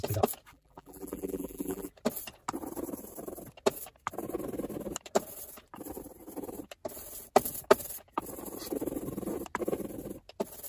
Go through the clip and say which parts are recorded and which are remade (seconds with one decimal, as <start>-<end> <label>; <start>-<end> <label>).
0.0-0.5 recorded; 0.5-1.9 remade; 1.9-10.7 recorded

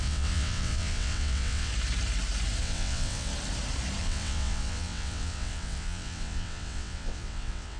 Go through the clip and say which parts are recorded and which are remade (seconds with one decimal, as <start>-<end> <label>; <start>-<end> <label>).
0.0-1.7 remade; 1.7-2.6 recorded; 2.6-3.3 remade; 3.3-4.0 recorded; 4.0-7.8 remade

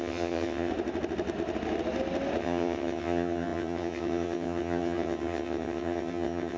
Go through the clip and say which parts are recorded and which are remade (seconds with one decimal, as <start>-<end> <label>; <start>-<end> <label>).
0.0-0.7 remade; 0.7-2.4 recorded; 2.4-6.6 remade

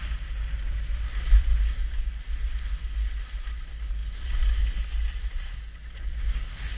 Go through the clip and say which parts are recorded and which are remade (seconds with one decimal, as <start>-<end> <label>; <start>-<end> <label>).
0.0-6.8 recorded

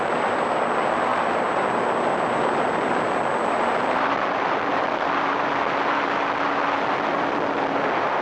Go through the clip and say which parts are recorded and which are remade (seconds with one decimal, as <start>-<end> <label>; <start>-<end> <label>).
0.0-8.2 recorded

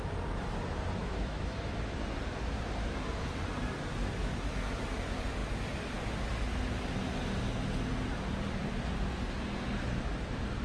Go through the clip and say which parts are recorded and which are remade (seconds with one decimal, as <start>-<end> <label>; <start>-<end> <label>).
0.0-1.0 recorded; 1.0-1.7 remade; 1.7-10.6 recorded

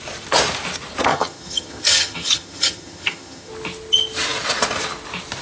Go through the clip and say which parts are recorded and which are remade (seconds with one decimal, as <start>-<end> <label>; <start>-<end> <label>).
0.0-1.1 recorded; 1.1-3.5 remade; 3.5-5.4 recorded